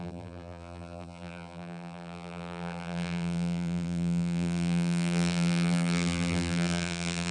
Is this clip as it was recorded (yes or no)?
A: no